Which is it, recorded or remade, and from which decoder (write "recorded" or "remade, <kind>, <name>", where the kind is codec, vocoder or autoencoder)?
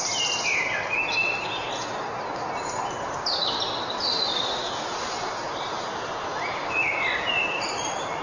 recorded